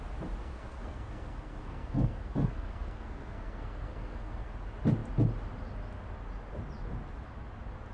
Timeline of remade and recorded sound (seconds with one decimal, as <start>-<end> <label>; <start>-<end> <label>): 0.0-0.4 recorded; 0.4-4.5 remade; 4.5-7.9 recorded